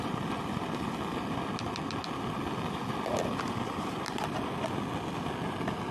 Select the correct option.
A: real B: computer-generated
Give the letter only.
A